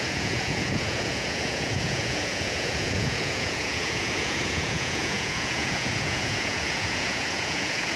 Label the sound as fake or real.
fake